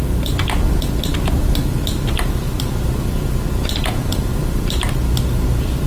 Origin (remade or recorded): recorded